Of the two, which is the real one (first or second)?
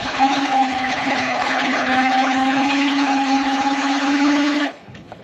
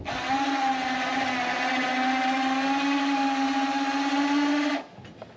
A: second